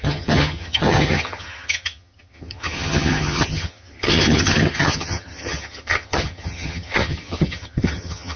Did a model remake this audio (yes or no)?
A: yes